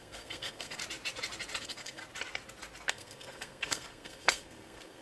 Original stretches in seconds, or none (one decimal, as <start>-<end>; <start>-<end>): 0.8-1.6; 2.0-2.9